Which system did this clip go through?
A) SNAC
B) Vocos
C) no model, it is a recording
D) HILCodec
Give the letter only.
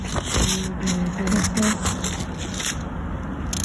C